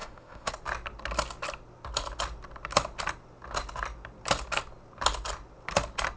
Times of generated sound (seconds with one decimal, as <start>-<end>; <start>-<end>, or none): 0.0-0.5